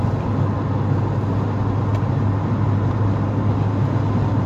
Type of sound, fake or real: real